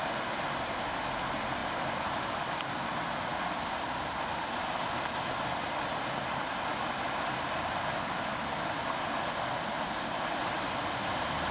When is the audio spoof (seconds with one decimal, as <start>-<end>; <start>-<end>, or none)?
none